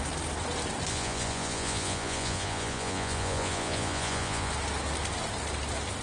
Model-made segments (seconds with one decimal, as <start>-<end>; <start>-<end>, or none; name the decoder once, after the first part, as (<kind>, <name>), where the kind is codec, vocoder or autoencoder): 0.9-4.5 (vocoder, Vocos)